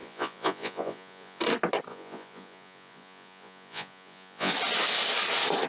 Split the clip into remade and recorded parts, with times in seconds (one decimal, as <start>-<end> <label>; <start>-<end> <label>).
0.0-1.4 remade; 1.4-1.9 recorded; 1.9-4.5 remade; 4.5-5.7 recorded

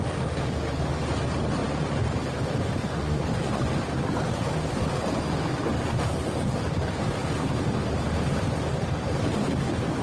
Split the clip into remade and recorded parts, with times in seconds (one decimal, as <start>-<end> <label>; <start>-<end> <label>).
0.0-1.6 recorded; 1.6-2.1 remade; 2.1-2.8 recorded; 2.8-3.7 remade; 3.7-10.0 recorded

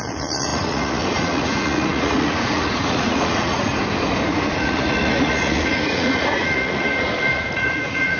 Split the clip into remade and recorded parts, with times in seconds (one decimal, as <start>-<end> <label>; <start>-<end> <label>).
0.0-3.7 remade; 3.7-4.5 recorded; 4.5-8.2 remade

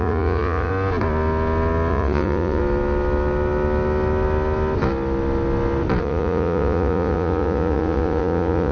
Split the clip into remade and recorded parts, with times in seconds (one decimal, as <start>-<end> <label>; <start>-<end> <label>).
0.0-0.7 remade; 0.7-1.9 recorded; 1.9-2.6 remade; 2.6-6.0 recorded; 6.0-8.7 remade

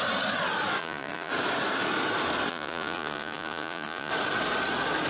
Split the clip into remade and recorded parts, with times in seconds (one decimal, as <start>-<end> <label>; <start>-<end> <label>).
0.0-0.8 recorded; 0.8-1.3 remade; 1.3-2.5 recorded; 2.5-4.1 remade; 4.1-5.1 recorded

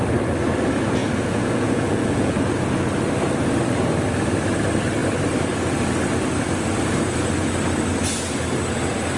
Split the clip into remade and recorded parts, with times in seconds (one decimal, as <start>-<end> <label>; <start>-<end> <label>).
0.0-1.0 recorded; 1.0-2.4 remade; 2.4-9.2 recorded

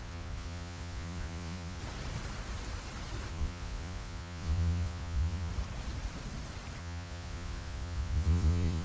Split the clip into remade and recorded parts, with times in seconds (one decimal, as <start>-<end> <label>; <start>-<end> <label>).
0.0-1.8 remade; 1.8-3.3 recorded; 3.3-5.5 remade; 5.5-6.8 recorded; 6.8-8.8 remade